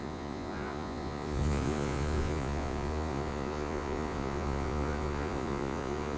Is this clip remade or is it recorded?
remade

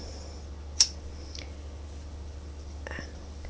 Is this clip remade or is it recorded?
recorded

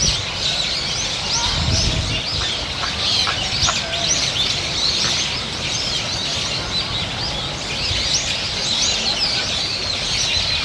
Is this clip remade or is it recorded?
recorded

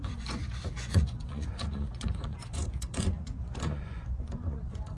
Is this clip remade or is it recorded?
remade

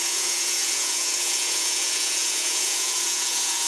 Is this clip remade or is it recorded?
remade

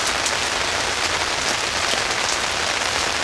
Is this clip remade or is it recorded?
recorded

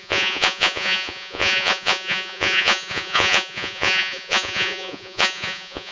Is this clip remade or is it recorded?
remade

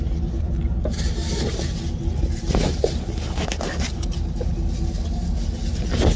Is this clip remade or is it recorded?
recorded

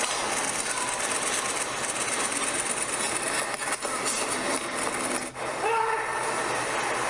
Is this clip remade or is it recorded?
recorded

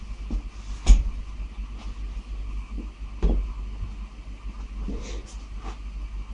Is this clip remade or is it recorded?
recorded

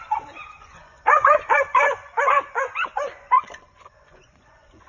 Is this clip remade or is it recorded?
remade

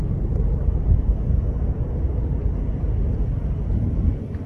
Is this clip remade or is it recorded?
recorded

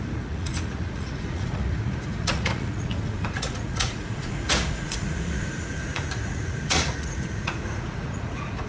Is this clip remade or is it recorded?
remade